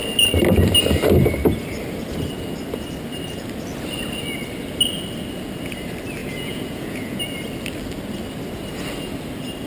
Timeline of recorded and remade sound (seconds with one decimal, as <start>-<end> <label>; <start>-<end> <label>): 0.0-6.2 recorded; 6.2-7.2 remade; 7.2-9.7 recorded